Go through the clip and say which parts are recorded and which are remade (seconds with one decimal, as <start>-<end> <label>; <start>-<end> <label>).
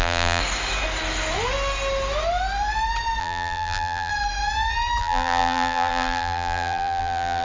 0.0-0.4 remade; 0.4-3.2 recorded; 3.2-4.1 remade; 4.1-5.0 recorded; 5.0-7.4 remade